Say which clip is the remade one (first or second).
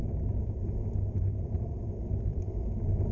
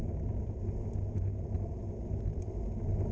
first